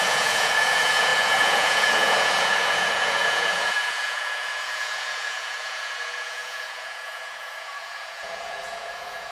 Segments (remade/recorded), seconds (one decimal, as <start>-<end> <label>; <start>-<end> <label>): 0.0-9.3 remade

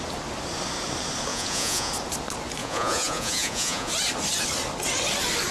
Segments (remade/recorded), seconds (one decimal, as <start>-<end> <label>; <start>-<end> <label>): 0.0-1.3 recorded; 1.3-1.9 remade; 1.9-2.6 recorded; 2.6-3.9 remade; 3.9-5.5 recorded

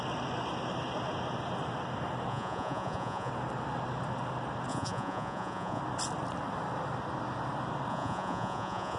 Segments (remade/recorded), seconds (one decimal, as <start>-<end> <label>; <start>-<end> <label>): 0.0-2.3 recorded; 2.3-3.3 remade; 3.3-4.7 recorded; 4.7-5.8 remade; 5.8-7.9 recorded; 7.9-9.0 remade

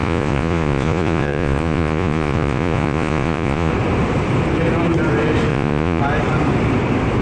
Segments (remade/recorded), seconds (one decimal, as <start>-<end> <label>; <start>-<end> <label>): 0.0-3.7 remade; 3.7-5.5 recorded; 5.5-6.0 remade; 6.0-7.2 recorded

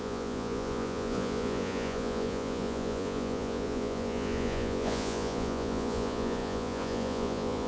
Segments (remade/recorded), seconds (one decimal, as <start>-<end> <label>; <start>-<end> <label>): 0.0-7.7 remade

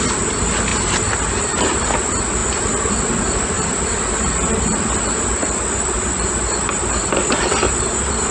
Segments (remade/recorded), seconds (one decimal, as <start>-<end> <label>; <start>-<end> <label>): 0.0-8.3 recorded